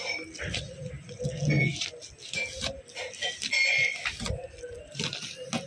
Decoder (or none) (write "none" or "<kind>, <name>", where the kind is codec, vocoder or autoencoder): none